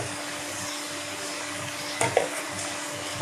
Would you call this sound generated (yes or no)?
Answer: yes